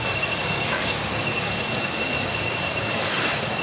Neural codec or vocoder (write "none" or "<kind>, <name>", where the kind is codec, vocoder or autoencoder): codec, DAC